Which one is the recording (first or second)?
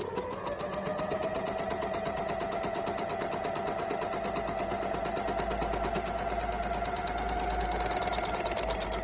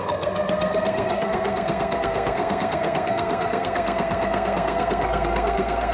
first